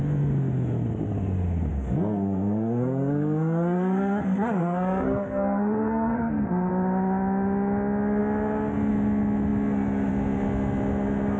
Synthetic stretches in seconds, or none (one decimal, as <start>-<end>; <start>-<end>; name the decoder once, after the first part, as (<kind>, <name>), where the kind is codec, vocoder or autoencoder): 1.7-6.7 (codec, SNAC)